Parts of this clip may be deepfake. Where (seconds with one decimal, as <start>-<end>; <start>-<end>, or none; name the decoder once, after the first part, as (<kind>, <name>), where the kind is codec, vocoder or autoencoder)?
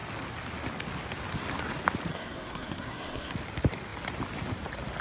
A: 2.1-3.3 (codec, SNAC)